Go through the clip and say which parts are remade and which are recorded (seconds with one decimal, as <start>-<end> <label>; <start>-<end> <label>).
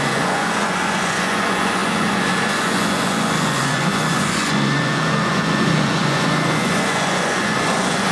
0.0-8.1 remade